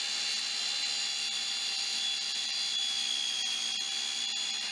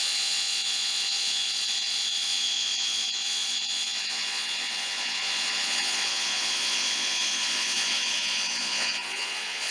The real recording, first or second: first